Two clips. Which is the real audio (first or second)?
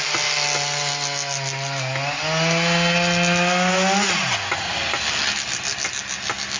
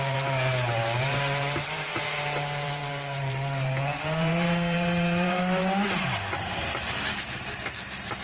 first